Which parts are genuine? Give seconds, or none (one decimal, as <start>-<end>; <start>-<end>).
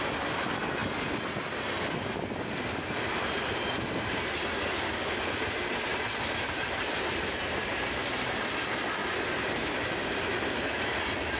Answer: 0.0-11.4